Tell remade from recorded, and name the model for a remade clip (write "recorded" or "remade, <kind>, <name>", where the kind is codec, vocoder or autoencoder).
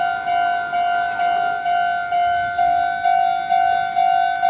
recorded